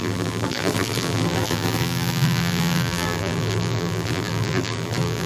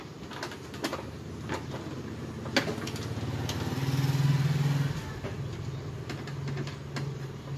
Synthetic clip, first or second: first